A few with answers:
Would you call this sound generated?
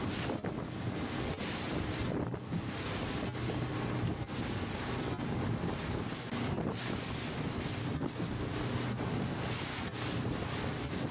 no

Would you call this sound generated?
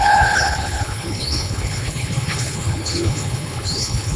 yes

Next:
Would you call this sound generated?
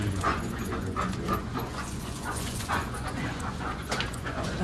yes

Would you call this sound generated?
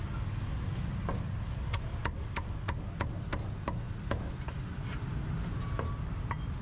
no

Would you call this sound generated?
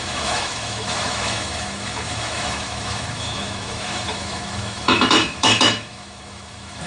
yes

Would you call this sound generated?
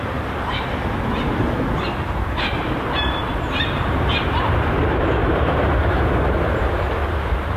yes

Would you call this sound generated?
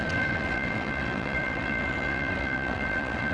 yes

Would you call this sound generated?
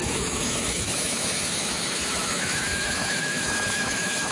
yes